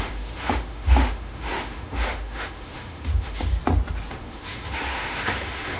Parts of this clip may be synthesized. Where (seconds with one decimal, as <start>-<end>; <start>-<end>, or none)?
0.0-3.5; 4.1-5.8

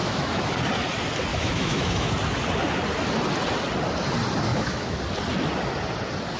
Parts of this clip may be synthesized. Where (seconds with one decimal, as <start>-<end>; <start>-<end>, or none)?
0.0-0.5; 1.3-2.1; 4.5-5.0